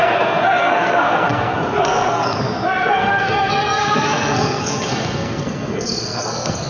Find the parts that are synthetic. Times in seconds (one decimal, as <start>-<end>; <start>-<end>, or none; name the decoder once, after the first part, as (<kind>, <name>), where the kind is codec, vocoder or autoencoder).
0.0-6.7 (codec, SNAC)